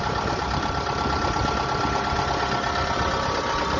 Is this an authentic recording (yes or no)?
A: yes